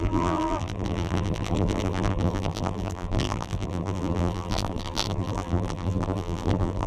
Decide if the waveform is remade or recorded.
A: remade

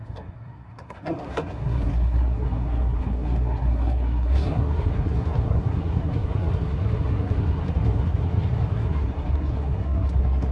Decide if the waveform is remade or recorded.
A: remade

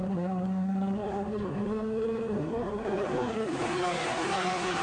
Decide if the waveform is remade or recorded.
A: remade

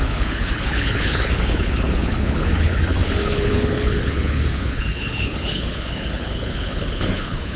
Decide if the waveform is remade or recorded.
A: remade